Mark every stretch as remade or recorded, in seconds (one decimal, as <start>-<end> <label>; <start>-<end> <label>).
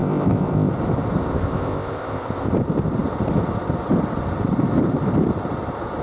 0.0-0.7 remade; 0.7-1.3 recorded; 1.3-2.5 remade; 2.5-6.0 recorded